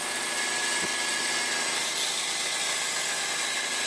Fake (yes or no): no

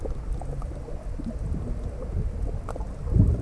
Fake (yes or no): no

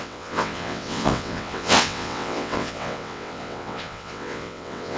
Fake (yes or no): yes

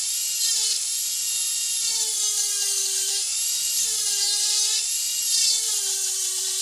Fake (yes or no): yes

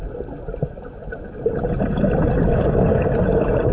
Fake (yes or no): no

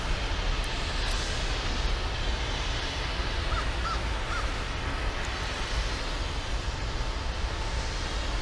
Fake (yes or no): no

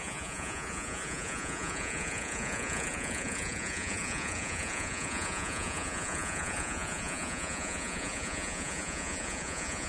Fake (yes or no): yes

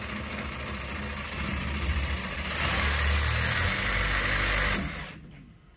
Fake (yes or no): no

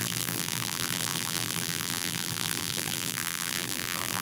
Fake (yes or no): yes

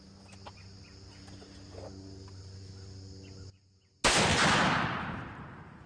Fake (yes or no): no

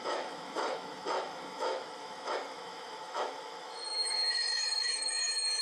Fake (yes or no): yes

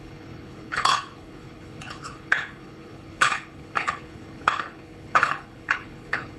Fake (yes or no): yes